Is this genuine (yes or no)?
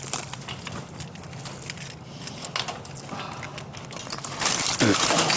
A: yes